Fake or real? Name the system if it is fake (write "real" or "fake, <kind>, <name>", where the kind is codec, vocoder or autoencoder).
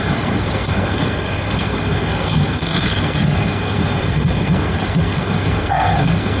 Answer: fake, codec, SNAC